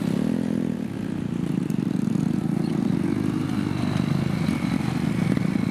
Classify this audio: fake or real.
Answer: real